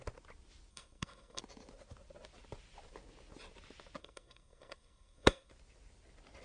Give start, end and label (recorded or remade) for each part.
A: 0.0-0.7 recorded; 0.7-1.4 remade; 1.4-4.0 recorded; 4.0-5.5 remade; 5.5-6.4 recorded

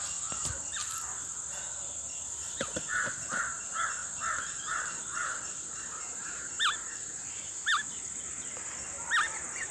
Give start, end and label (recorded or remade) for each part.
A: 0.0-4.0 recorded; 4.0-8.0 remade; 8.0-9.7 recorded

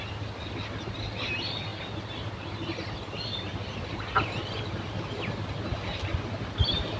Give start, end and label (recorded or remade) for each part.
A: 0.0-7.0 recorded